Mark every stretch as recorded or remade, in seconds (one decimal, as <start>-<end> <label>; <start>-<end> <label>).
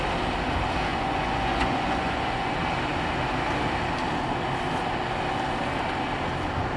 0.0-0.9 recorded; 0.9-2.5 remade; 2.5-6.8 recorded